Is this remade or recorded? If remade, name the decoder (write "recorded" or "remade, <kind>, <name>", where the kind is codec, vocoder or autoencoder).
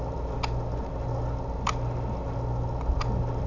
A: recorded